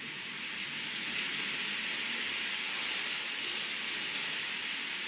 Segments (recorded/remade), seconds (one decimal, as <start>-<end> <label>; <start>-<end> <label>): 0.0-5.1 recorded